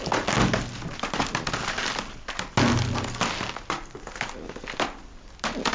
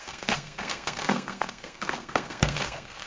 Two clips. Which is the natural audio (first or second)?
first